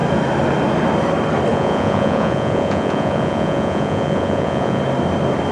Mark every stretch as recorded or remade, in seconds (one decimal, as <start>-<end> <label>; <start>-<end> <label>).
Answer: 0.0-1.5 recorded; 1.5-4.8 remade; 4.8-5.5 recorded